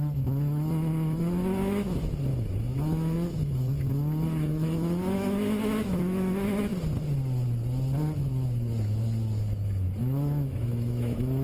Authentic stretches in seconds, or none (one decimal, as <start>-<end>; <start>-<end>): 6.7-10.0